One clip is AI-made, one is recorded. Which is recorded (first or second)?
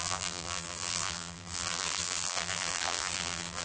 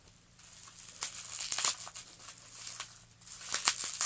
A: second